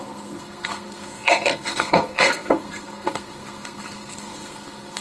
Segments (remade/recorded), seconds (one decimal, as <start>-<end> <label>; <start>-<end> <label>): 0.0-5.0 remade